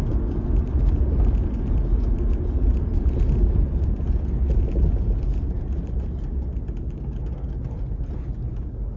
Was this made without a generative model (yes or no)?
yes